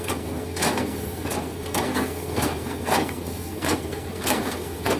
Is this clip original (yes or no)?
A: no